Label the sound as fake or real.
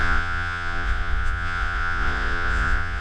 fake